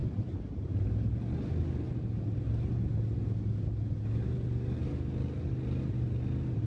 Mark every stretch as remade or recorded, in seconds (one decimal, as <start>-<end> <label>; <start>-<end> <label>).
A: 0.0-6.7 recorded